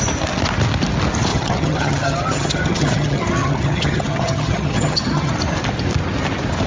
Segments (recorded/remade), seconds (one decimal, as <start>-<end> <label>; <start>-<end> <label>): 0.0-1.3 recorded; 1.3-5.3 remade; 5.3-6.7 recorded